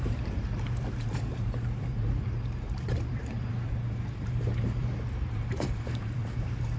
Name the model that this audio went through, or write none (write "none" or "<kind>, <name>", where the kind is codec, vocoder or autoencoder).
vocoder, BigVGAN v2